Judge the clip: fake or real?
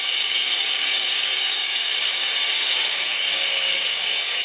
fake